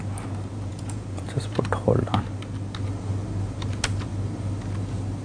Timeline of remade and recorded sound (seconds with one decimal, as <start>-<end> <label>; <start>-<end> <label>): 0.0-0.5 recorded; 0.5-1.6 remade; 1.6-5.2 recorded